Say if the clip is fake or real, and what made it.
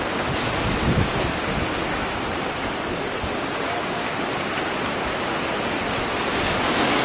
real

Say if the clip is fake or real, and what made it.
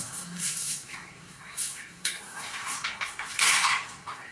fake, codec, SNAC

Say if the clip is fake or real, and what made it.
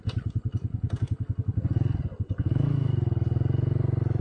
real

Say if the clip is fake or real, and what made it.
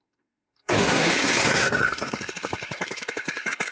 fake, codec, SNAC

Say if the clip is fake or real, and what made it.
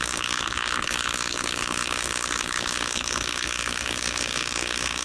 fake, autoencoder, DAC-VAE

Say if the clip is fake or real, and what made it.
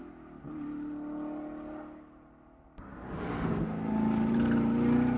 real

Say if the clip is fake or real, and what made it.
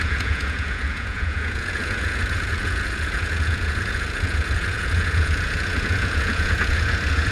fake, vocoder, Vocos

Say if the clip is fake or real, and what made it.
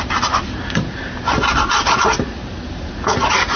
real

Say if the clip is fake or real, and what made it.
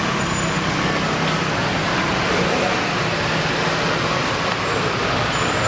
real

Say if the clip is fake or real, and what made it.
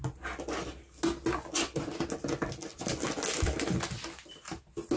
real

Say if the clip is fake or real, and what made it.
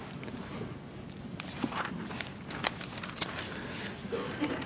real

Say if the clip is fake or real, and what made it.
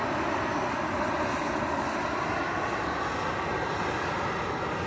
real